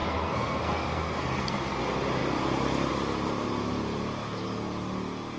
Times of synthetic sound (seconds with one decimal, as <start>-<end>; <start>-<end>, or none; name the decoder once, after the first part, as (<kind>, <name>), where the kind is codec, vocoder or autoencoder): 0.0-1.8 (codec, SNAC)